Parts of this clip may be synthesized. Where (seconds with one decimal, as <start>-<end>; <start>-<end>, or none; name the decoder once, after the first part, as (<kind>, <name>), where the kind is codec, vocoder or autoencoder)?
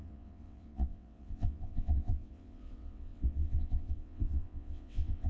0.0-5.3 (vocoder, WaveNeXt)